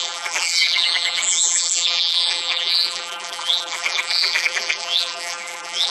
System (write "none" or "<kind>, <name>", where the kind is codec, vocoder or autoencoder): vocoder, BigVGAN v2